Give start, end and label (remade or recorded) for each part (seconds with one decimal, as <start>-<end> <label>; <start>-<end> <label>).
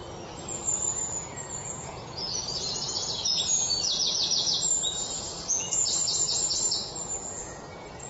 0.0-0.7 recorded; 0.7-4.2 remade; 4.2-4.9 recorded; 4.9-8.1 remade